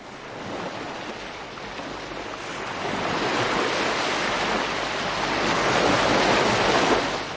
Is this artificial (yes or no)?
no